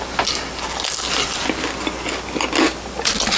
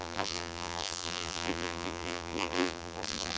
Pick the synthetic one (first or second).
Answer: second